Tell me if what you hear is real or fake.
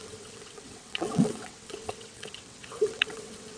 fake